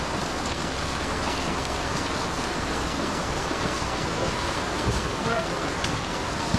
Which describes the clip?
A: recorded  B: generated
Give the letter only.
B